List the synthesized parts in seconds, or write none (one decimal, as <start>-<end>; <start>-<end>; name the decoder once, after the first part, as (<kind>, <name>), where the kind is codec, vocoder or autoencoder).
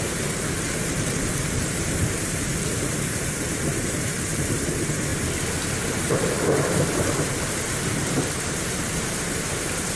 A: 0.0-5.1 (vocoder, BigVGAN v2); 5.7-10.0